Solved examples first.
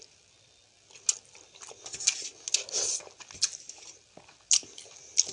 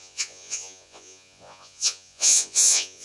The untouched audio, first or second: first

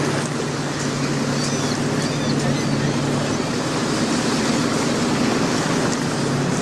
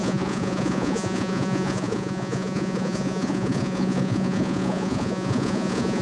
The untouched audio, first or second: first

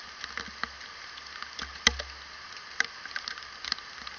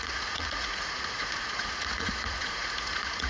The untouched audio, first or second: first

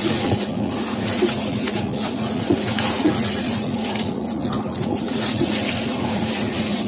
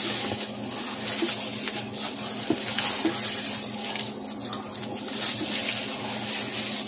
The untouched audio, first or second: second